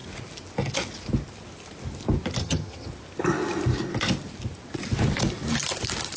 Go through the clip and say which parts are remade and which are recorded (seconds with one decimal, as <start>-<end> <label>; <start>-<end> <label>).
0.0-2.4 recorded; 2.4-2.9 remade; 2.9-6.2 recorded